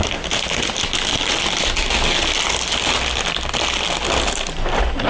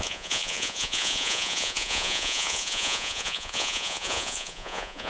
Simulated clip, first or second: second